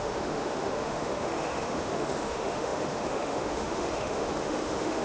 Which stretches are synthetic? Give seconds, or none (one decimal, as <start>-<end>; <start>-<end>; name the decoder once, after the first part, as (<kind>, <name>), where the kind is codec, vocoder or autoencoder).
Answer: 0.0-5.0 (autoencoder, DAC-VAE)